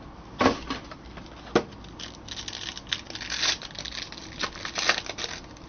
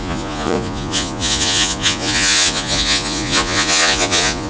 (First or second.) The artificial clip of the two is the second